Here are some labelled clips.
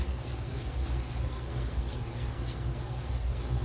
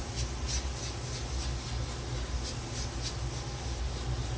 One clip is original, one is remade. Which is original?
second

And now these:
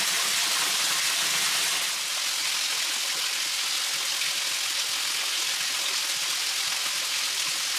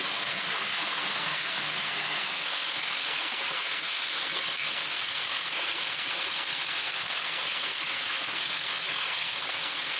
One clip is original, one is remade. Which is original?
first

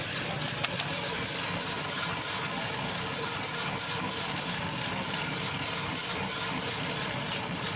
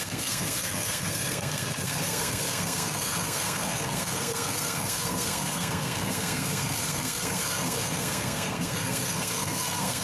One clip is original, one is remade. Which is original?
first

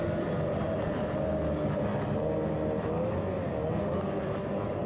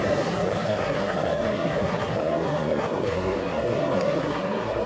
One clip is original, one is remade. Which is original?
first